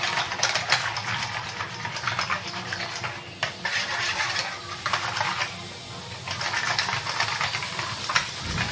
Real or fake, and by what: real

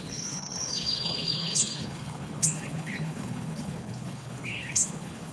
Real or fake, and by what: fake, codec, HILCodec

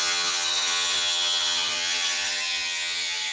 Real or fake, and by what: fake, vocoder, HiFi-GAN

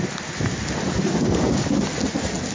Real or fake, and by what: real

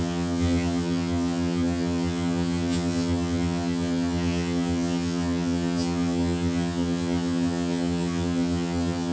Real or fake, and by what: fake, vocoder, HiFi-GAN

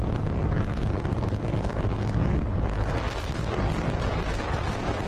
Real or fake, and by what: real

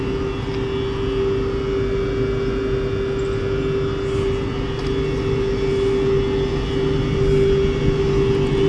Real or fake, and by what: real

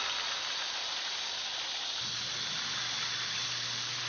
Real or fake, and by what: real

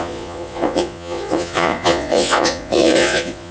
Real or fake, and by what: fake, vocoder, Vocos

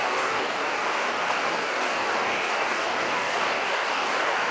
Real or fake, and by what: fake, codec, DAC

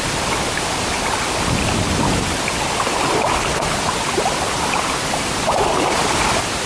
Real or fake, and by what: fake, vocoder, BigVGAN v2